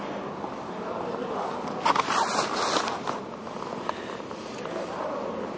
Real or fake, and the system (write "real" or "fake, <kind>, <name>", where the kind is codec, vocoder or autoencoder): real